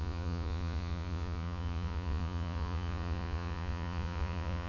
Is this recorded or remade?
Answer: remade